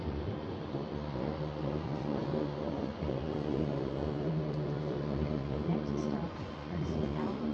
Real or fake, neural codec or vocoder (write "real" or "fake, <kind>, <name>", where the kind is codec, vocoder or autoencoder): fake, vocoder, Vocos